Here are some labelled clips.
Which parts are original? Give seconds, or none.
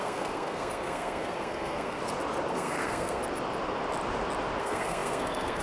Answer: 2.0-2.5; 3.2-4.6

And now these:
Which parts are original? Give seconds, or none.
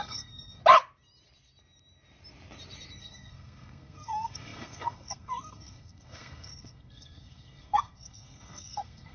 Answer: 0.6-3.0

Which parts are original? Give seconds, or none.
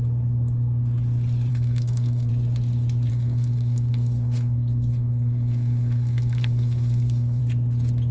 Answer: 0.0-1.5; 2.3-3.1; 7.4-8.1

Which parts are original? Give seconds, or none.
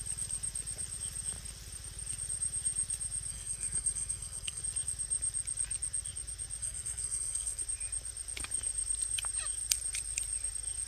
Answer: 0.0-3.3; 4.6-6.6; 7.6-10.9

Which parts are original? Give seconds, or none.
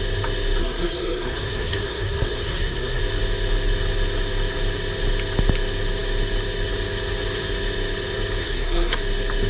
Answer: 0.0-0.6; 3.0-8.4; 9.0-9.5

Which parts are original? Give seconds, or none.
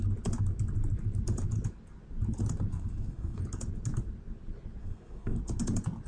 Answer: 0.0-2.7; 3.4-4.8; 5.4-6.1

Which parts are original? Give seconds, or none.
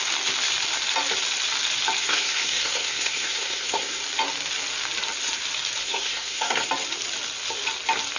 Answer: 0.0-2.0; 4.0-5.8; 6.7-8.2